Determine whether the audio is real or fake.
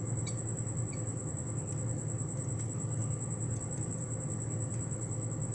real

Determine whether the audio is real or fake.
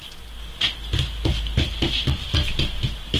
real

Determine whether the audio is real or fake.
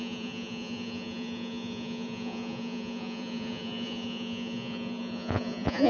fake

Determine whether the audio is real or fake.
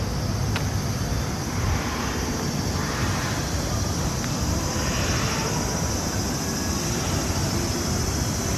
real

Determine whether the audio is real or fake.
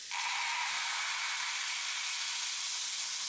real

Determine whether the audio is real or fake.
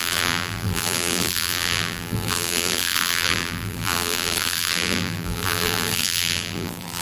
fake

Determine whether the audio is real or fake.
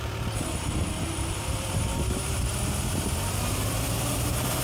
fake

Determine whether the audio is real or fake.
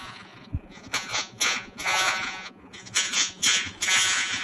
fake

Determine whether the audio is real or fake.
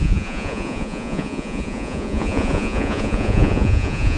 fake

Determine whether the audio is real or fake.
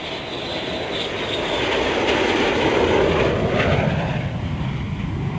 real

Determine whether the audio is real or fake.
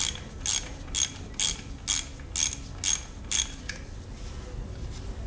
real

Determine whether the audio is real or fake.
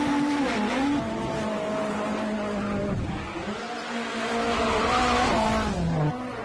real